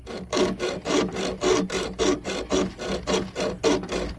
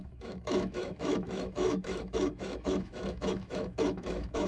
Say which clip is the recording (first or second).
first